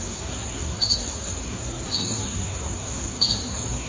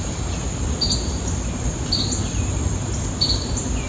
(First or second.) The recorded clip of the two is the second